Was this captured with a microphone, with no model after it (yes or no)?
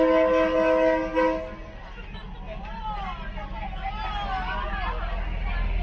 yes